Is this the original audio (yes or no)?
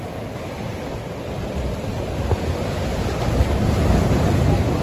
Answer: yes